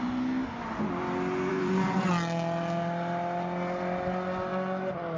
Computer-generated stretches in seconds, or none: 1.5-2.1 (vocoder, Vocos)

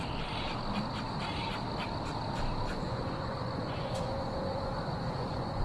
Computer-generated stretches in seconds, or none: 2.7-5.6 (vocoder, Vocos)

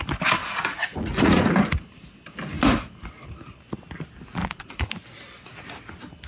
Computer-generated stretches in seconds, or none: 0.4-1.4 (vocoder, Vocos); 4.4-4.9

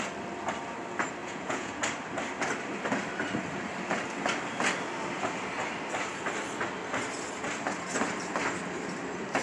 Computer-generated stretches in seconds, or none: 1.2-1.8 (vocoder, Vocos)

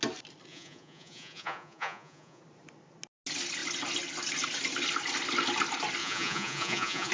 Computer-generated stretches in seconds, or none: 0.5-2.4 (vocoder, Vocos); 6.0-7.1

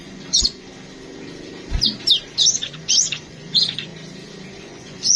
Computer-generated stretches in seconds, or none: 0.0-0.7 (vocoder, Vocos); 2.4-3.9; 4.6-5.2

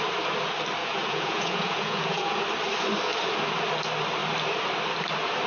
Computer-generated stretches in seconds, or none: 0.8-2.4 (vocoder, Vocos)